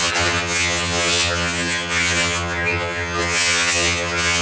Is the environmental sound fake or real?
fake